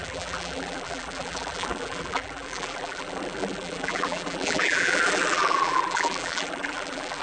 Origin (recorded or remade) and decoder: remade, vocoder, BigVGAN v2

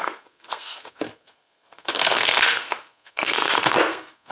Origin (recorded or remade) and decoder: remade, codec, SNAC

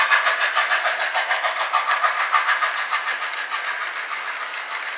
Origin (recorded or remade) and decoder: remade, vocoder, BigVGAN v2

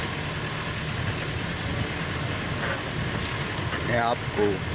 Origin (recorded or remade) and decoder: recorded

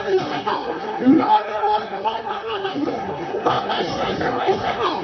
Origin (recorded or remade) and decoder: remade, codec, SNAC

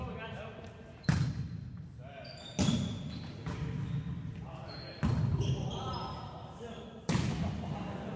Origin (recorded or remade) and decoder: recorded